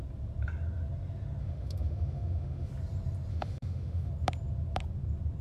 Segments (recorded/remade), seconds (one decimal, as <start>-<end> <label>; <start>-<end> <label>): 0.0-1.4 recorded; 1.4-2.7 remade; 2.7-3.3 recorded; 3.3-4.1 remade; 4.1-5.4 recorded